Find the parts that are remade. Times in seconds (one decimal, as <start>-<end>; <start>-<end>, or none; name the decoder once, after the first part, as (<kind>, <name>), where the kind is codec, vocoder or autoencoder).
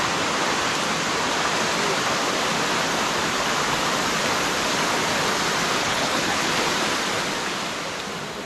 5.8-6.5 (codec, HILCodec)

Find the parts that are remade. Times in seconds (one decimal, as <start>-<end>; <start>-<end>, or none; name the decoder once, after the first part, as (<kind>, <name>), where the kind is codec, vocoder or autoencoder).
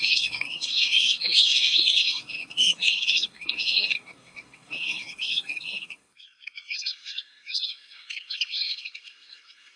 0.0-9.8 (codec, SNAC)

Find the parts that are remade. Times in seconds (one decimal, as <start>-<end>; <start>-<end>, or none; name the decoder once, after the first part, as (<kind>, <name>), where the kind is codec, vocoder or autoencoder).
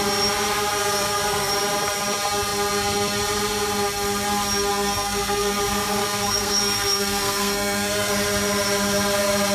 0.8-1.5 (codec, SNAC); 4.7-5.6; 6.0-8.1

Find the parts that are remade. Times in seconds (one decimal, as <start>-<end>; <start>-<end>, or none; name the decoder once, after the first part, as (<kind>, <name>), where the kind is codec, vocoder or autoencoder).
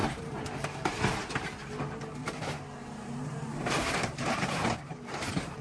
0.0-1.0 (vocoder, BigVGAN v2); 2.2-5.6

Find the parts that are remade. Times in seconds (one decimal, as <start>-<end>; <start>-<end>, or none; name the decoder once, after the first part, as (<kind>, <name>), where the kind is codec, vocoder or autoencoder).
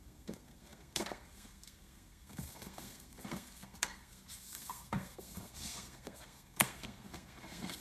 0.0-7.8 (codec, SNAC)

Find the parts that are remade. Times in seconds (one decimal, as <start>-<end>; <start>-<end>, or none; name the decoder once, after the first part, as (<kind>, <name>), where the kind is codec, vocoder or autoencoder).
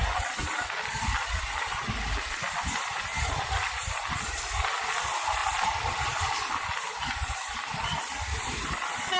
none